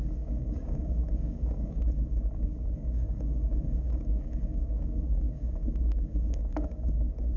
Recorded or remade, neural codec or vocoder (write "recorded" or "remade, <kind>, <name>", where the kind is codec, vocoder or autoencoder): remade, codec, DAC